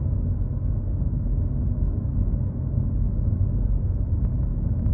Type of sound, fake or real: fake